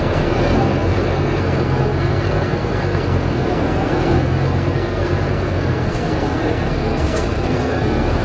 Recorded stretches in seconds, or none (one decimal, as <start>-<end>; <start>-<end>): none